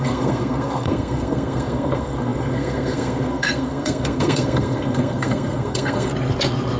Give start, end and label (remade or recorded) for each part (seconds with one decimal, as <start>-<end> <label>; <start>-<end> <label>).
0.0-6.1 remade; 6.1-6.8 recorded